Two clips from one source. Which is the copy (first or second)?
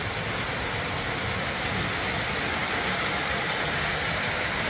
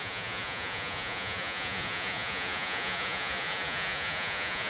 second